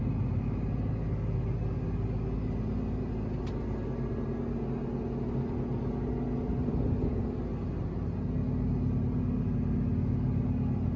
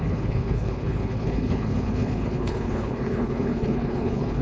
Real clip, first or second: first